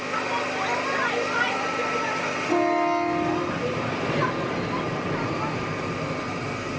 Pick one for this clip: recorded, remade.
recorded